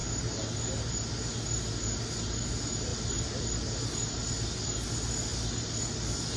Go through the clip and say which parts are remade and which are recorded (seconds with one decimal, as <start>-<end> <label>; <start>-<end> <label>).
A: 0.0-6.4 recorded